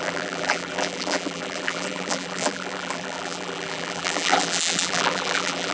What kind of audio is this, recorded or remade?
remade